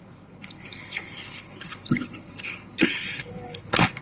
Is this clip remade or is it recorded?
remade